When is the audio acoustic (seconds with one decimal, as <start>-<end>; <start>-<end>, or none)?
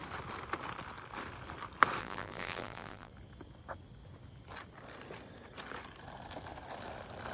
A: 0.0-2.0; 3.1-7.3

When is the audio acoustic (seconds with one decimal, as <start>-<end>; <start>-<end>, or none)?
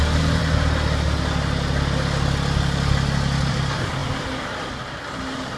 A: 0.4-3.5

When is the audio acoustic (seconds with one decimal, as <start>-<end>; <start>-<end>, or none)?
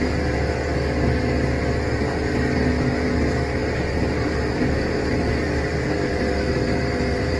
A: 0.0-3.6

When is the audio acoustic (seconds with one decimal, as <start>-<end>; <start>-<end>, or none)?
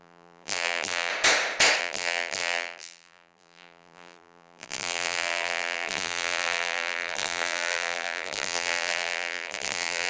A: 1.1-1.8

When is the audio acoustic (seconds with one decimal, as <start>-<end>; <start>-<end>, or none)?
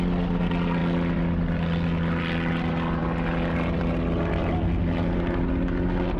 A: 0.0-6.2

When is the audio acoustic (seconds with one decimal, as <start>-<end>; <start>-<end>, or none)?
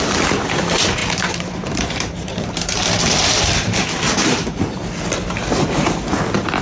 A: 4.8-6.6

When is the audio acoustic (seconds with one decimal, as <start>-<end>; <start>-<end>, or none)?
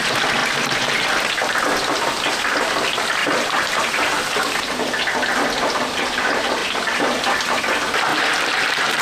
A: 0.0-3.2; 4.4-8.1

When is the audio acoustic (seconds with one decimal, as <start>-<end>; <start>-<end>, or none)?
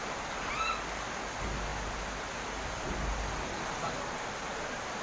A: 0.5-5.0